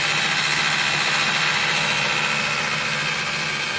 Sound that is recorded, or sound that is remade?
recorded